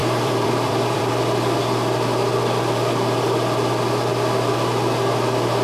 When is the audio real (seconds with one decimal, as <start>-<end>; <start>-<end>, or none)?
1.1-5.6